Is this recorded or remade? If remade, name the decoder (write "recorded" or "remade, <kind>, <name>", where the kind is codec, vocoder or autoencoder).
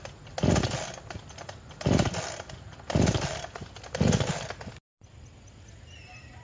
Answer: recorded